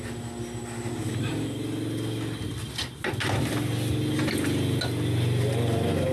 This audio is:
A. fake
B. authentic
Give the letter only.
B